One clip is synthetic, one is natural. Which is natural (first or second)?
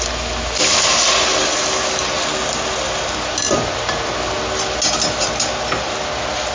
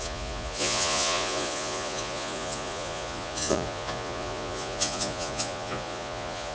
first